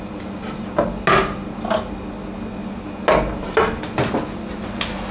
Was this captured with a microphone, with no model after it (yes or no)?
yes